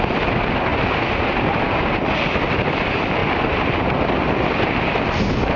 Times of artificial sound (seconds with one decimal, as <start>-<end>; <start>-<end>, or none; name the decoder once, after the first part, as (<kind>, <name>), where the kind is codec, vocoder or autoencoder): 3.2-3.7 (vocoder, BigVGAN v2)